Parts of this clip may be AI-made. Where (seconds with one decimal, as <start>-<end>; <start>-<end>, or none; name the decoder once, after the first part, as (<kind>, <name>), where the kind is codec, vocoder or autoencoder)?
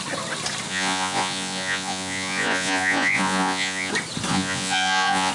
0.7-3.9 (vocoder, Vocos); 4.3-5.3